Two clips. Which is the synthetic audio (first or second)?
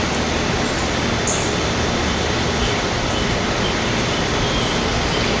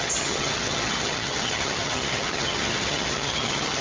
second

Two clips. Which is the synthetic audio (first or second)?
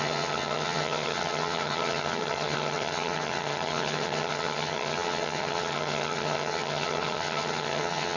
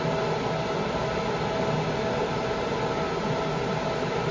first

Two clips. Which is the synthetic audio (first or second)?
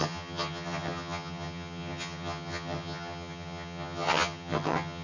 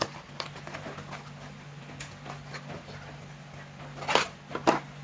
first